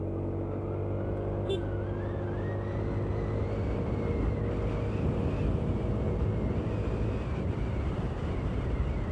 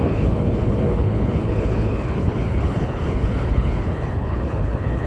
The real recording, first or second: first